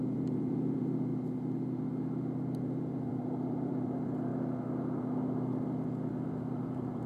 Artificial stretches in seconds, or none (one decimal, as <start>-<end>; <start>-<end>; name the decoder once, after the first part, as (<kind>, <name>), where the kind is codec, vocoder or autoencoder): 0.0-1.1 (vocoder, BigVGAN v2); 2.6-4.3; 6.1-7.1